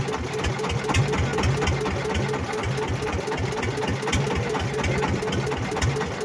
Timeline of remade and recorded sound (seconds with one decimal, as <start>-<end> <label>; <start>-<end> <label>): 0.0-6.2 recorded